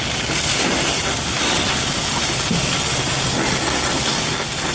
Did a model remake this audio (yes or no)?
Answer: no